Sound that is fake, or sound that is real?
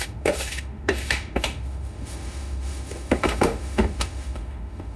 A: fake